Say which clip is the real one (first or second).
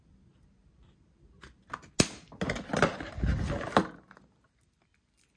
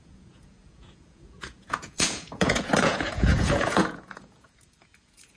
first